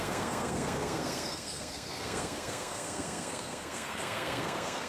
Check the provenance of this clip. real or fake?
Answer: fake